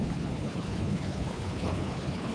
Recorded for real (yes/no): no